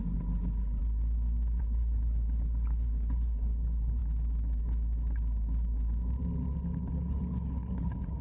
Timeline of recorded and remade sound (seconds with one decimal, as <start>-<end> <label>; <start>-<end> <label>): 0.0-0.8 remade; 0.8-1.6 recorded; 1.6-4.0 remade; 4.0-6.9 recorded; 6.9-8.2 remade